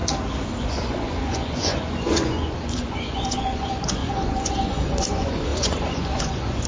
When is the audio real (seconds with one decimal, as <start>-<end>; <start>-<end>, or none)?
0.0-0.6